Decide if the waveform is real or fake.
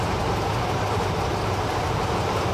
fake